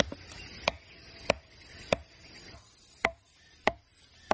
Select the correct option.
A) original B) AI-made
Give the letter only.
A